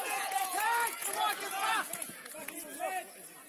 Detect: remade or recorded remade